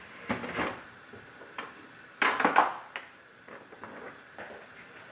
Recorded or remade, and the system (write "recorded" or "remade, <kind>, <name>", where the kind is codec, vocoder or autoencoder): recorded